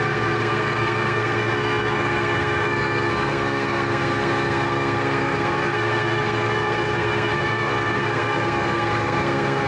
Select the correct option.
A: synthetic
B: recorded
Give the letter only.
A